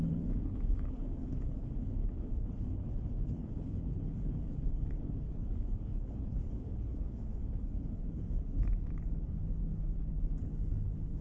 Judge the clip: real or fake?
fake